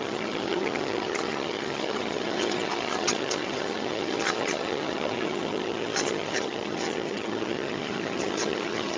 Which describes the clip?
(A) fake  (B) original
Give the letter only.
A